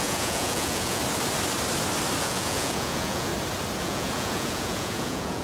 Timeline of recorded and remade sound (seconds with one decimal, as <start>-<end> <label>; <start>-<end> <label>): 0.0-1.0 remade; 1.0-2.2 recorded; 2.2-3.3 remade; 3.3-3.8 recorded; 3.8-5.4 remade

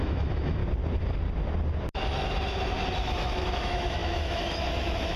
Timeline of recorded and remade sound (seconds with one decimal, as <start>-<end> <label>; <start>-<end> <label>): 0.0-0.6 remade; 0.6-3.0 recorded; 3.0-5.2 remade

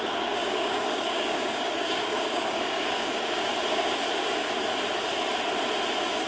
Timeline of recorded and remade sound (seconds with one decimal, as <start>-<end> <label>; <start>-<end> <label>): 0.0-3.5 remade; 3.5-6.3 recorded

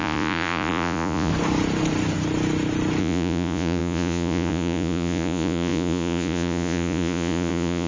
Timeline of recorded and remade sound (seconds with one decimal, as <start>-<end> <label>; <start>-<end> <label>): 0.0-1.3 remade; 1.3-3.0 recorded; 3.0-7.9 remade

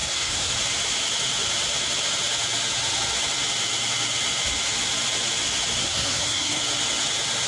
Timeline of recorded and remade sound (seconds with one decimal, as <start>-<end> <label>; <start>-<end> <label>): 0.0-0.5 remade; 0.5-5.8 recorded; 5.8-6.6 remade; 6.6-7.5 recorded

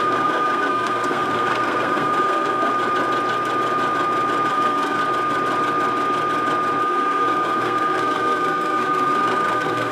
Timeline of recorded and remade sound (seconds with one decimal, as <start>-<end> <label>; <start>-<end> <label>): 0.0-2.7 remade; 2.7-4.5 recorded; 4.5-5.0 remade; 5.0-6.8 recorded; 6.8-9.9 remade

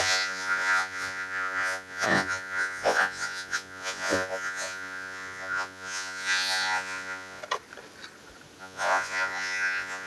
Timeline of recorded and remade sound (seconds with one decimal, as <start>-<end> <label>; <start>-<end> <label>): 0.0-7.4 remade; 7.4-8.6 recorded; 8.6-10.1 remade

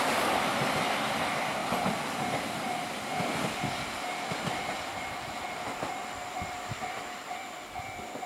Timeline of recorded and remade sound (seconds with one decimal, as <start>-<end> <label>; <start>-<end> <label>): 0.0-8.3 recorded